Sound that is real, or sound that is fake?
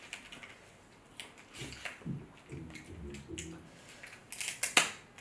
real